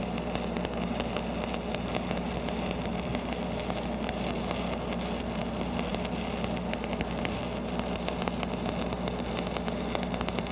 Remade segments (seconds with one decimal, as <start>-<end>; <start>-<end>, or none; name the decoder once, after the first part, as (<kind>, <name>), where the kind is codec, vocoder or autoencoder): none